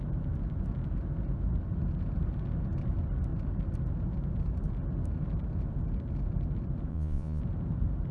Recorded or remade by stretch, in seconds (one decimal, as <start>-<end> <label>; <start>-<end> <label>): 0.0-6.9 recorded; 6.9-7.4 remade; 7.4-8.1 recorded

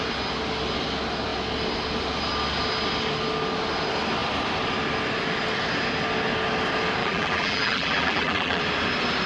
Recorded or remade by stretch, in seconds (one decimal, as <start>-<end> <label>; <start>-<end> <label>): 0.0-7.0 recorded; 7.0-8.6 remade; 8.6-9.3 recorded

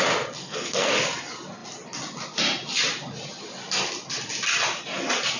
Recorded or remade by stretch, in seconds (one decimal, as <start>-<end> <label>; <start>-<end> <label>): 0.0-0.4 recorded; 0.4-0.9 remade; 0.9-5.4 recorded